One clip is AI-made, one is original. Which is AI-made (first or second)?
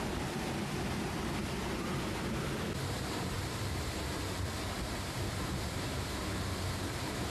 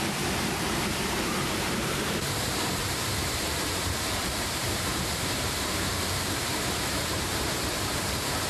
second